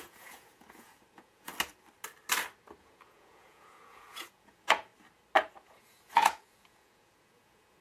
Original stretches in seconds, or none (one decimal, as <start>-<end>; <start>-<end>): 1.5-2.8; 4.9-5.6